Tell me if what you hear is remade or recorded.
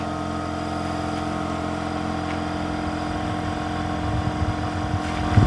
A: recorded